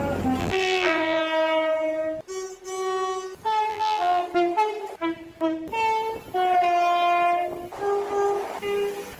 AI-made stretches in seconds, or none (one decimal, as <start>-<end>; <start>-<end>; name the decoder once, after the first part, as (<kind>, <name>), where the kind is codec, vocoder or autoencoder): 0.4-1.2 (vocoder, BigVGAN v2); 3.7-4.2